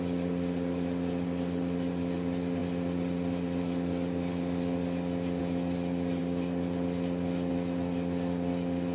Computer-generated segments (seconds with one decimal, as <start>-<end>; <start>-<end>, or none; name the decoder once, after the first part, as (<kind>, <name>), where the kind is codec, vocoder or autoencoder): none